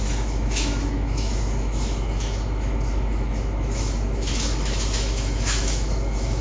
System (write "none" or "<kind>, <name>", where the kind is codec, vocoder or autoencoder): autoencoder, DAC-VAE